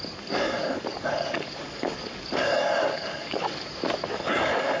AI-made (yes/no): yes